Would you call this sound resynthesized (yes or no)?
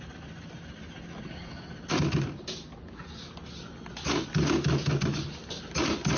no